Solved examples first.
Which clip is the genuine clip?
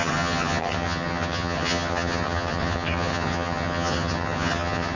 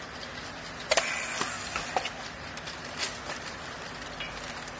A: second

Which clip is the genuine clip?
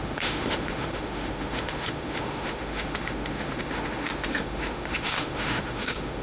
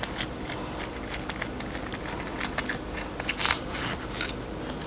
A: second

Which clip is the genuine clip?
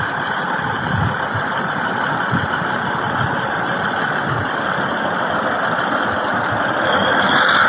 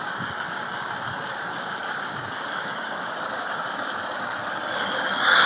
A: first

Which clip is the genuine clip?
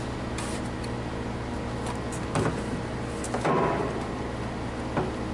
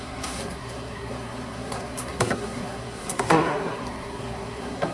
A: first